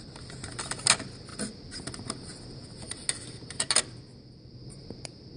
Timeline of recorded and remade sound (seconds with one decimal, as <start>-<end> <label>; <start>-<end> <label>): 0.0-5.4 recorded